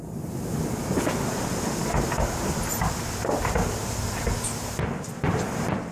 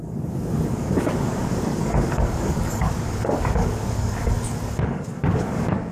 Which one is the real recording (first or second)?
first